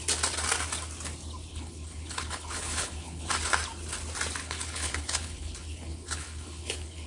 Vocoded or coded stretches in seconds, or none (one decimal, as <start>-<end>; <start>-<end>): 1.5-3.3; 4.4-7.1